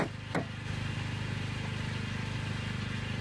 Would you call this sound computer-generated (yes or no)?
no